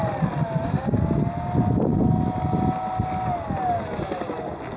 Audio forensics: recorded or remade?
recorded